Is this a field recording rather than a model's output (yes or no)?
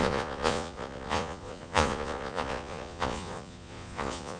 no